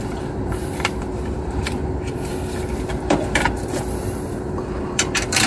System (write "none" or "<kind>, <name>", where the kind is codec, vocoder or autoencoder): vocoder, BigVGAN v2